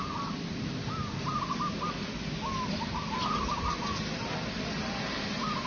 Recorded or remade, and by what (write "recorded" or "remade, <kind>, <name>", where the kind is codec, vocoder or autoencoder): recorded